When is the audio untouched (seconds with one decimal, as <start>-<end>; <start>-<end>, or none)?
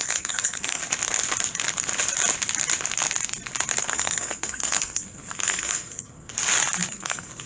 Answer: 0.8-3.8; 6.3-6.9